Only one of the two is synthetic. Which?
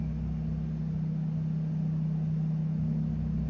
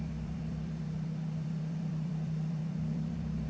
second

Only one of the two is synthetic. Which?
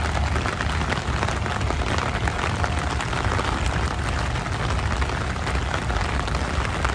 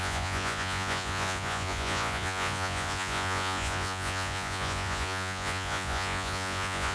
second